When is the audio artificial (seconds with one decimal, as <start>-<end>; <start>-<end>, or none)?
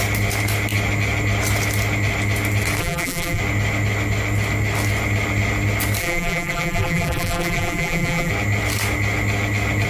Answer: 2.8-3.4; 6.0-8.3